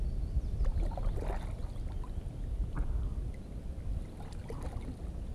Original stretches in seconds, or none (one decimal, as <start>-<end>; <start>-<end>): 0.0-5.3